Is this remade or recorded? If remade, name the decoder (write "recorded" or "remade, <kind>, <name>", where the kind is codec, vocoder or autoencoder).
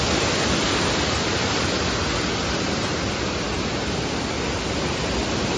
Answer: recorded